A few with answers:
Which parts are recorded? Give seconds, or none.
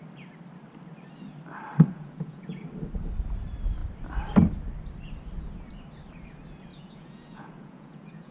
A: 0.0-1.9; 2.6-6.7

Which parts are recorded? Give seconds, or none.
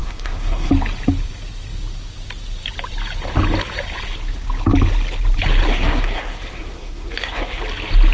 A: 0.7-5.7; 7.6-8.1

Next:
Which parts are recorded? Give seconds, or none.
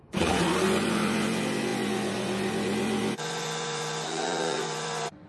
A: none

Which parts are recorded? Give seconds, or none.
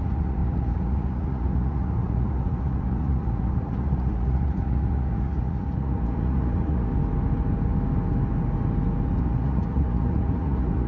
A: 6.9-9.2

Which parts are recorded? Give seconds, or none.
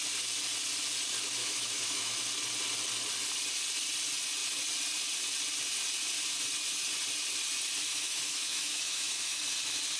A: 0.0-1.4; 2.2-7.9; 9.4-10.0